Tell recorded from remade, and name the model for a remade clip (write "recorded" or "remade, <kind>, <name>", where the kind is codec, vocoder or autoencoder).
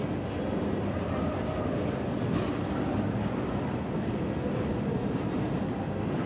recorded